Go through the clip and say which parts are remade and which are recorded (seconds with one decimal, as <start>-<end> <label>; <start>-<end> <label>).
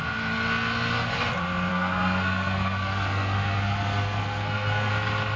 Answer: 0.0-1.7 recorded; 1.7-4.9 remade; 4.9-5.4 recorded